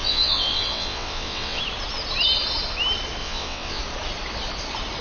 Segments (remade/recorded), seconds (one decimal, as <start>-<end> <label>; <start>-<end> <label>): 0.0-1.6 remade; 1.6-3.2 recorded; 3.2-3.8 remade; 3.8-5.0 recorded